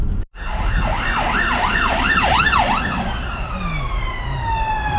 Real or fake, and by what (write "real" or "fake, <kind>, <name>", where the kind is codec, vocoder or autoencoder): real